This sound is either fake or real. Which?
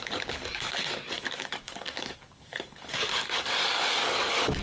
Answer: fake